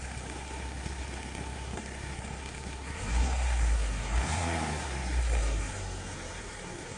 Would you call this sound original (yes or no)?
no